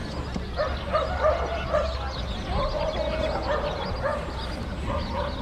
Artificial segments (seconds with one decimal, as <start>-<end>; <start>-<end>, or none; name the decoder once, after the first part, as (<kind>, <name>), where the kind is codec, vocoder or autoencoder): 4.1-4.9 (vocoder, BigVGAN v2)